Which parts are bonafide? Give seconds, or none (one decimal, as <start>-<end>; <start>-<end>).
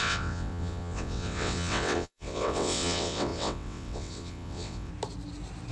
4.9-5.7